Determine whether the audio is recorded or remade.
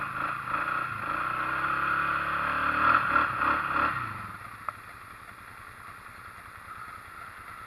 recorded